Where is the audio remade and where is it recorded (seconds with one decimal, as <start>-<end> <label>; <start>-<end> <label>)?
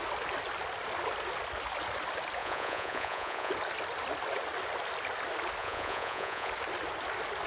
0.0-2.4 recorded; 2.4-3.5 remade; 3.5-5.6 recorded; 5.6-6.5 remade; 6.5-7.5 recorded